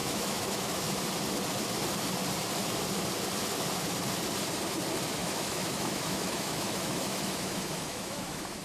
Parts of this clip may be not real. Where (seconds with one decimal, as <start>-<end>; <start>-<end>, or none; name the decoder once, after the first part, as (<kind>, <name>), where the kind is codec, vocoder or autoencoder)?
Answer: 0.0-0.8 (autoencoder, DAC-VAE); 5.2-8.6